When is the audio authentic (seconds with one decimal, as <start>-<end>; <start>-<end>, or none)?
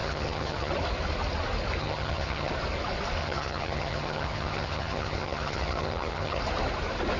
0.7-1.8; 2.5-3.2; 6.4-7.2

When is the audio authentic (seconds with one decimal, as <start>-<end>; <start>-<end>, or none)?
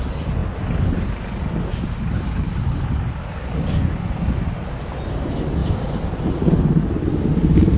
0.0-5.6; 6.3-7.3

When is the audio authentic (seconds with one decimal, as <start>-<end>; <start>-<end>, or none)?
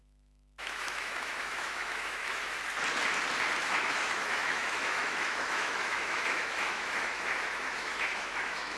2.6-3.6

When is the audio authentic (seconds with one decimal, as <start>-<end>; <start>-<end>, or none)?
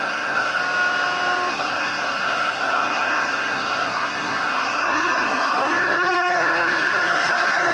0.6-1.5